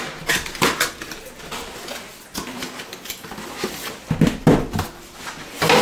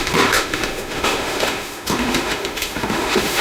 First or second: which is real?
first